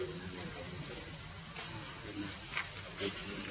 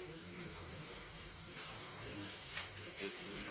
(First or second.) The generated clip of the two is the second